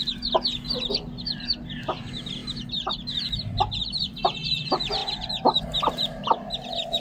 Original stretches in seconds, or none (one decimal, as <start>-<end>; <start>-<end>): none